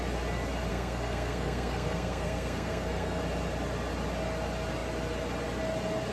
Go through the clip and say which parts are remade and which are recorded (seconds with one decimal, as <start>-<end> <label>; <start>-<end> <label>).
0.0-0.7 recorded; 0.7-3.2 remade; 3.2-6.1 recorded